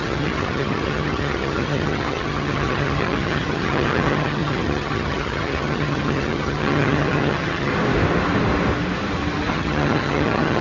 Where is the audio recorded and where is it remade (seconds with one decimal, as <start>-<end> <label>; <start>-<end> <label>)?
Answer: 0.0-7.7 remade; 7.7-9.5 recorded; 9.5-10.6 remade